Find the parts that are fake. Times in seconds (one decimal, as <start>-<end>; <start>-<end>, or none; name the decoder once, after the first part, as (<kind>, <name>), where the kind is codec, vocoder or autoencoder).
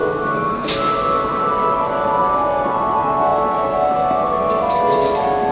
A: 0.0-0.8 (codec, SNAC)